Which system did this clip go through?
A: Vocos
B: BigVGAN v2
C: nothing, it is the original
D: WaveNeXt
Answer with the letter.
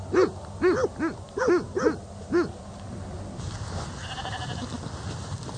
C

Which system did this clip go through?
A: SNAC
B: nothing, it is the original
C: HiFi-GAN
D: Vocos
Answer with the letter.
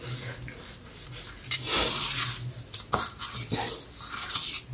B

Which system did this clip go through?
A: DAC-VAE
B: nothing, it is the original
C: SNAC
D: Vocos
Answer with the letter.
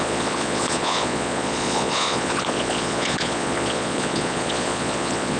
D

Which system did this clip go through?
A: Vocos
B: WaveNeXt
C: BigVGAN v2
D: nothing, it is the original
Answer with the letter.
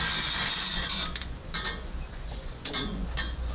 A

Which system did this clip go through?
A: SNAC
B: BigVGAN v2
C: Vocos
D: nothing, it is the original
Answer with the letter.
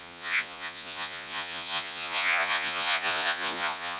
C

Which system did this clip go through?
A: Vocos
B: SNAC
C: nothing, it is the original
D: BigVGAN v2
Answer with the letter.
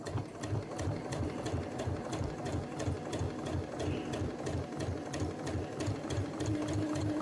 C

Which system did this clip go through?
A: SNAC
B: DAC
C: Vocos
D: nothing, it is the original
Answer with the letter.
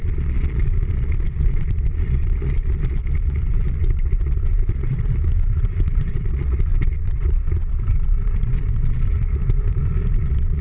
C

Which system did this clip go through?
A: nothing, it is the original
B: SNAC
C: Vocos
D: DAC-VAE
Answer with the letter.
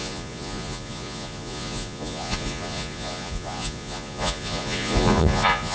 C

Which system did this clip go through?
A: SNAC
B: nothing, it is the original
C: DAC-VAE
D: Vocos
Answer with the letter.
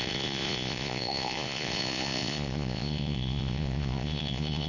D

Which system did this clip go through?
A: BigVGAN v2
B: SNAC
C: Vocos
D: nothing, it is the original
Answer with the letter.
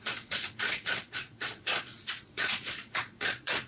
C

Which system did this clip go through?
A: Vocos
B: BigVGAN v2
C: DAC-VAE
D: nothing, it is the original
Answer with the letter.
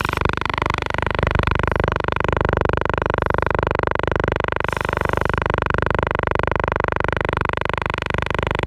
D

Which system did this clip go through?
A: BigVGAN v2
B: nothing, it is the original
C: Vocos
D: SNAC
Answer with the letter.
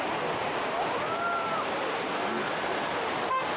B